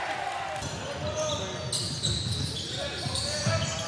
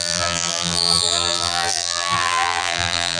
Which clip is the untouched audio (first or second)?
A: first